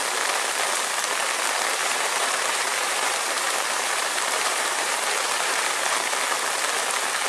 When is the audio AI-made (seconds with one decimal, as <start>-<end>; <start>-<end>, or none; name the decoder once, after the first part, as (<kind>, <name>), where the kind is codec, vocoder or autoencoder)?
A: 1.8-6.2 (vocoder, BigVGAN v2)